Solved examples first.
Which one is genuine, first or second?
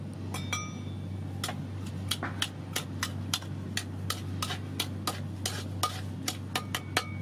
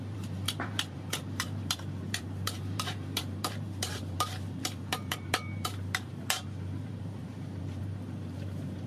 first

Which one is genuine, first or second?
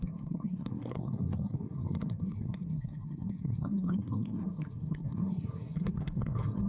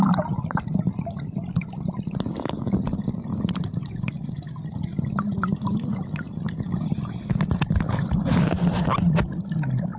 second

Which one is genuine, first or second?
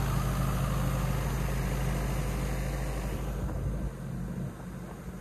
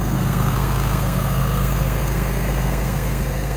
first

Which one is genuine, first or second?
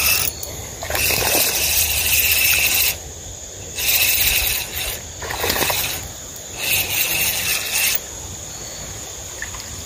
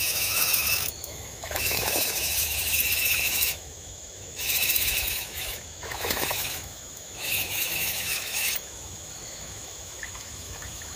first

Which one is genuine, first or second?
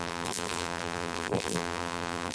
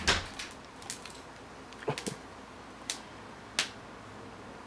second